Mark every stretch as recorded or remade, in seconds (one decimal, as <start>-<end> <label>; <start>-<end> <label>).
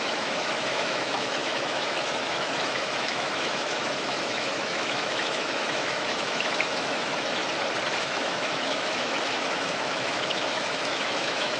0.0-7.4 remade; 7.4-8.0 recorded; 8.0-11.6 remade